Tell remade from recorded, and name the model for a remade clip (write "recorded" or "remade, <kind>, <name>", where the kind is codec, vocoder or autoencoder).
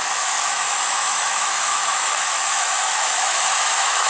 remade, autoencoder, DAC-VAE